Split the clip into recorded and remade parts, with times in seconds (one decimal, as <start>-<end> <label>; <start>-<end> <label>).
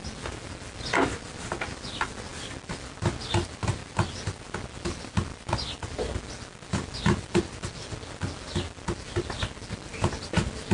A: 0.0-10.7 recorded